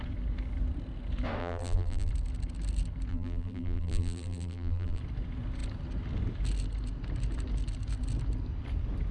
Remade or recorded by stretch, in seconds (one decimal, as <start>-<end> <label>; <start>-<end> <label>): 0.0-1.4 recorded; 1.4-2.1 remade; 2.1-3.1 recorded; 3.1-5.0 remade; 5.0-9.1 recorded